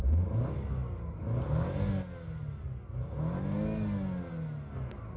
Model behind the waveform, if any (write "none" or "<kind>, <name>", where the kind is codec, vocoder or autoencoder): none